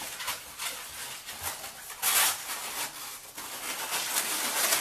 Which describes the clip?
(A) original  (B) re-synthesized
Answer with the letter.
A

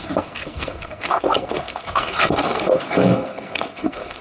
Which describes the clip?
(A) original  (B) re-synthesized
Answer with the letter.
B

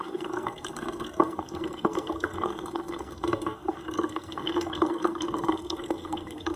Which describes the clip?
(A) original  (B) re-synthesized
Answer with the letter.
B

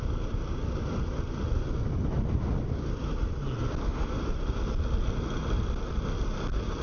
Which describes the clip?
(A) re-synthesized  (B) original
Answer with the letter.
B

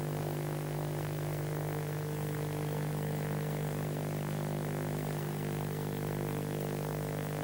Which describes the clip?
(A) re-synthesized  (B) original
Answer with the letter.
A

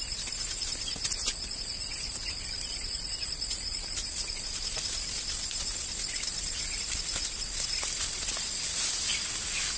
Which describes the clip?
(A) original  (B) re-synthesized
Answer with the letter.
A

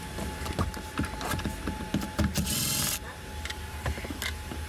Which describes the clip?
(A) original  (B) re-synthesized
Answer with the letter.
A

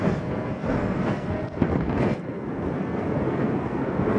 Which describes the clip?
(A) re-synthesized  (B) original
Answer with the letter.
A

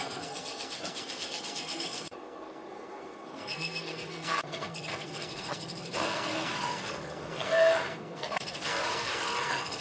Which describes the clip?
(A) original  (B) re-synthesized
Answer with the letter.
B